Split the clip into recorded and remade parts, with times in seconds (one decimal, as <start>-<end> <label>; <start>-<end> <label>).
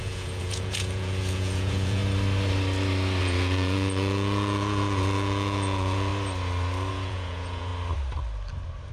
0.0-2.0 remade; 2.0-3.2 recorded; 3.2-6.1 remade; 6.1-6.9 recorded; 6.9-7.7 remade; 7.7-8.9 recorded